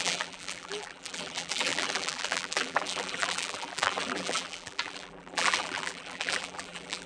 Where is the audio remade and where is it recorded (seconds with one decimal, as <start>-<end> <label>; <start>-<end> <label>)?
0.0-7.1 remade